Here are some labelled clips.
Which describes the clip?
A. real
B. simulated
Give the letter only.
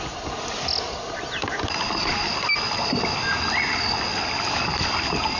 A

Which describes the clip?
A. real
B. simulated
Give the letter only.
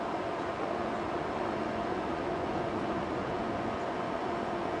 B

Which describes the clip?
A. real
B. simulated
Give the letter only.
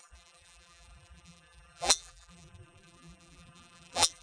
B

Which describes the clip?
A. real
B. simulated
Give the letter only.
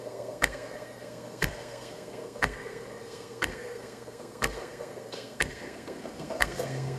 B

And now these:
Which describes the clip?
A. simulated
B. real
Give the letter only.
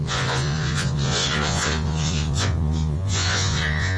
A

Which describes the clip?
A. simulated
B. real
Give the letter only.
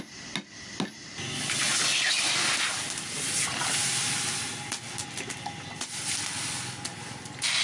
B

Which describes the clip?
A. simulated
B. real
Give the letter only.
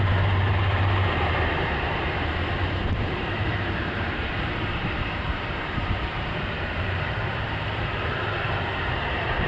A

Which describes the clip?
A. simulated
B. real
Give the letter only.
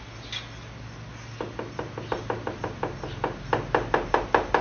B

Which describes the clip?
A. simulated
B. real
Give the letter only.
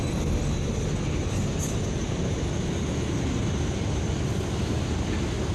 B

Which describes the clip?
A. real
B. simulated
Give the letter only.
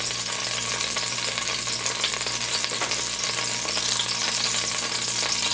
A